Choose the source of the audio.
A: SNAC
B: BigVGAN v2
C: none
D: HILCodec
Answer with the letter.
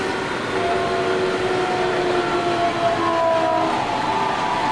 C